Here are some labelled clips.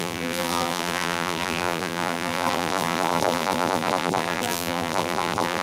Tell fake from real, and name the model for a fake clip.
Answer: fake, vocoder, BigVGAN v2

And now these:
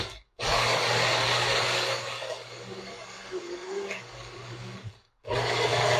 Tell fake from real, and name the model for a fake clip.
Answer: fake, codec, DAC